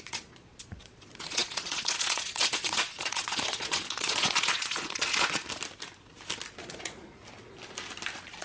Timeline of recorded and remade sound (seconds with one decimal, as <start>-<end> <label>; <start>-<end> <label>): 0.0-5.4 remade; 5.4-6.6 recorded; 6.6-7.2 remade; 7.2-8.4 recorded